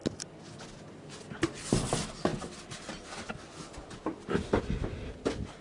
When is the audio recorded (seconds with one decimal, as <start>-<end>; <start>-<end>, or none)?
0.0-5.6